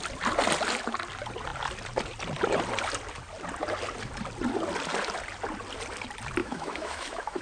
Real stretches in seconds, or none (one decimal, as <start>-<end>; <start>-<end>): 0.0-6.4